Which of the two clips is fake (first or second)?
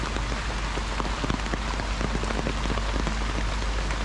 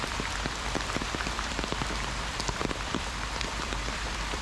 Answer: second